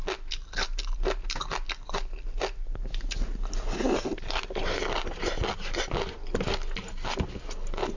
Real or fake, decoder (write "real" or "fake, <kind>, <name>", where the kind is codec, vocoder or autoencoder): real